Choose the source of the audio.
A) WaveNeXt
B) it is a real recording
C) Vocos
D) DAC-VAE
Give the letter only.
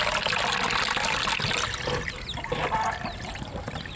B